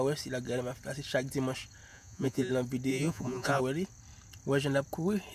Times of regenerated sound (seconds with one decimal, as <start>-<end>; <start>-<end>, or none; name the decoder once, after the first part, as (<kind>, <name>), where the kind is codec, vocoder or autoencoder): 1.9-2.5 (vocoder, Vocos); 2.9-3.6